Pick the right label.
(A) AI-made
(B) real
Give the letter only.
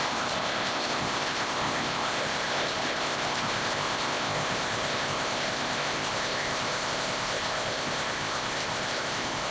A